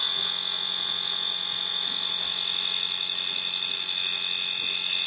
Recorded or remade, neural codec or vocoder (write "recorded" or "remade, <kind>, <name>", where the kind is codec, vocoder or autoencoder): recorded